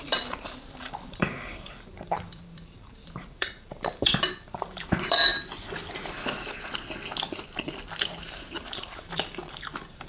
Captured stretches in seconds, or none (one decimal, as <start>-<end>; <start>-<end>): 5.3-8.2